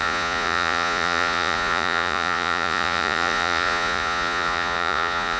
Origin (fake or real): fake